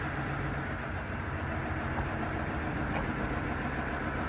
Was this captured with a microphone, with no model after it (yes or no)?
yes